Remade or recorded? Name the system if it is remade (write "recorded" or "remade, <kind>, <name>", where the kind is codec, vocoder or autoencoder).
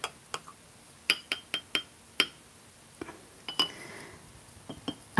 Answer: recorded